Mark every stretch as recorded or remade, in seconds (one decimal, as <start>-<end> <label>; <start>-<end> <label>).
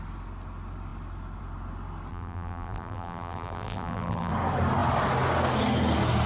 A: 0.0-2.1 recorded; 2.1-4.3 remade; 4.3-6.3 recorded